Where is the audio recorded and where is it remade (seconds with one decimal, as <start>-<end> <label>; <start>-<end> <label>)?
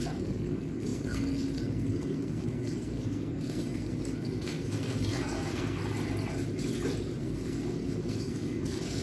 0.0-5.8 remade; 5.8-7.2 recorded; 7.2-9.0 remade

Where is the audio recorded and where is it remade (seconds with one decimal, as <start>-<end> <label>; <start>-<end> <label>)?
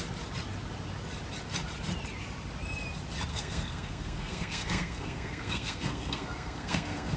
0.0-3.3 recorded; 3.3-7.2 remade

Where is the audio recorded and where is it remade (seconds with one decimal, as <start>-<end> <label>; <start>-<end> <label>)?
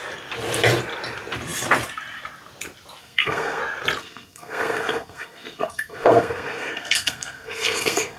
0.0-3.0 recorded; 3.0-3.6 remade; 3.6-4.0 recorded; 4.0-8.2 remade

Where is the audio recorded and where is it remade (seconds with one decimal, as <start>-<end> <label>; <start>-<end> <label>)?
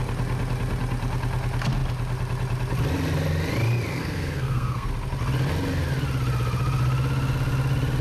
0.0-3.9 recorded; 3.9-4.9 remade; 4.9-8.0 recorded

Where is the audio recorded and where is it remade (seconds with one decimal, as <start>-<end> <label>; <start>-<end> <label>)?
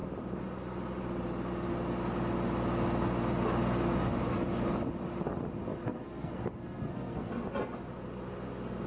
0.0-5.7 recorded; 5.7-7.3 remade; 7.3-8.9 recorded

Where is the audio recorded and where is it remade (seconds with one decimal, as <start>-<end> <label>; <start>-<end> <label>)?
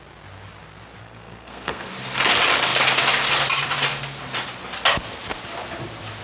0.0-1.0 recorded; 1.0-1.9 remade; 1.9-6.2 recorded